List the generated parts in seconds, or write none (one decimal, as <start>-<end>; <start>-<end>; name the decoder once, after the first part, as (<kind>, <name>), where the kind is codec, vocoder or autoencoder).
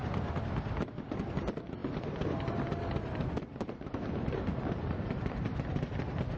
0.0-4.5 (vocoder, BigVGAN v2); 5.1-6.4